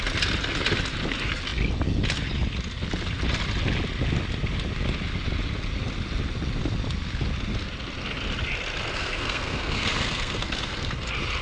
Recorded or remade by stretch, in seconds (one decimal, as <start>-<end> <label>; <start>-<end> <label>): 0.0-8.9 recorded; 8.9-10.9 remade; 10.9-11.4 recorded